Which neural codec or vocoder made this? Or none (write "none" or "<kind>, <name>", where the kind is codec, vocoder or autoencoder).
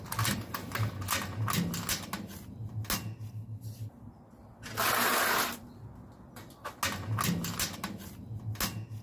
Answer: none